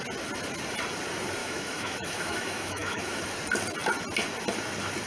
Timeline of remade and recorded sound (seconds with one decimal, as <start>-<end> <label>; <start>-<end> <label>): 0.0-1.4 recorded; 1.4-3.2 remade; 3.2-5.1 recorded